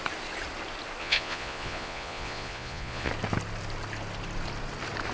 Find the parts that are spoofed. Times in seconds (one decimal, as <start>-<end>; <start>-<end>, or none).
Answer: 1.0-3.1